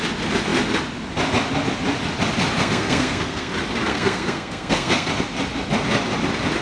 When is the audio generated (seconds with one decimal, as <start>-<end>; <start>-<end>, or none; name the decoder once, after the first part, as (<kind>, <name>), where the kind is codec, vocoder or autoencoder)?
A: 2.6-3.5 (codec, SNAC); 3.9-5.1